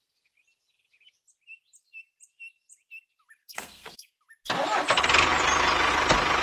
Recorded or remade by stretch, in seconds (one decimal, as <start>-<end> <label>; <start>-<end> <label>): 0.0-3.4 recorded; 3.4-4.1 remade; 4.1-6.4 recorded